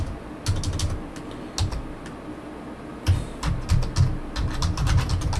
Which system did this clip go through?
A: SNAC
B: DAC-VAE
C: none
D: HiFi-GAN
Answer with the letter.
C